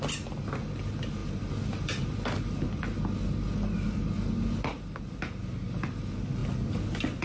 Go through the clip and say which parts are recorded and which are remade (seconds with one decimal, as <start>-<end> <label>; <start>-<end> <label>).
0.0-7.2 recorded